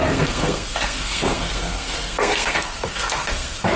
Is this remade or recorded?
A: remade